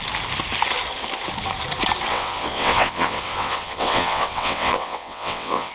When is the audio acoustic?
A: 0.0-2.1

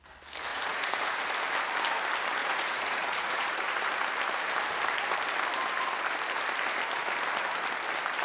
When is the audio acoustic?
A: 0.0-0.5; 1.3-2.4; 3.8-8.2

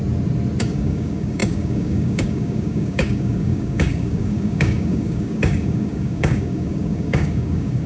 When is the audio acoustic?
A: 0.0-0.6

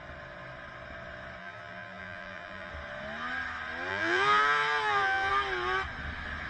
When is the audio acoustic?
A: 0.0-1.4; 2.7-3.9; 5.3-6.5

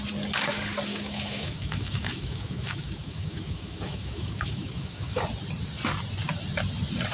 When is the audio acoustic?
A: 0.0-0.9; 5.2-7.1

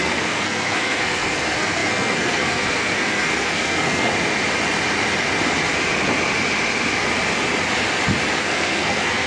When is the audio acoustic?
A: 4.1-8.4

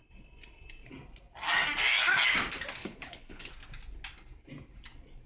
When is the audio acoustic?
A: 0.0-2.8; 3.5-5.3